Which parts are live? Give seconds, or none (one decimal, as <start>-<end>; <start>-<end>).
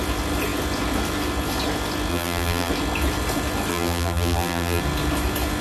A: 0.0-2.1; 2.7-3.7; 4.8-5.6